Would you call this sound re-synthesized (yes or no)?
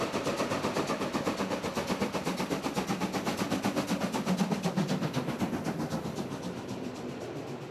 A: no